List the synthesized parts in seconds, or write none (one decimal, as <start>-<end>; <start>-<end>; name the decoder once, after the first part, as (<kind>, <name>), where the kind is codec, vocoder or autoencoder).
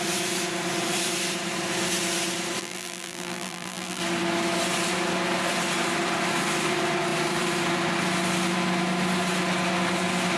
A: 2.6-4.0 (vocoder, BigVGAN v2)